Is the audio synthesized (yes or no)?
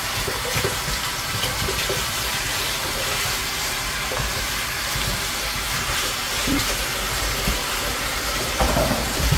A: yes